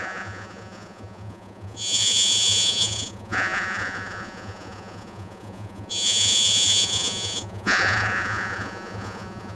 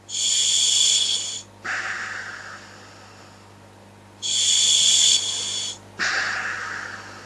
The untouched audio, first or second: second